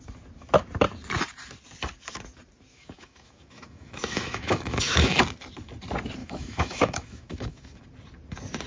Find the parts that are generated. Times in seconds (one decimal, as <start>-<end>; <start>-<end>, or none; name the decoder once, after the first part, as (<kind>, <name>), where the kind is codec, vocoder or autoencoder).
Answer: 2.7-5.2 (autoencoder, DAC-VAE); 6.2-7.8